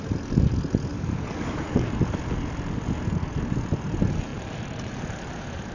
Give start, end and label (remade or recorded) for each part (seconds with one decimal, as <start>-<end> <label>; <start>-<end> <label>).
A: 0.0-0.9 recorded; 0.9-2.0 remade; 2.0-5.7 recorded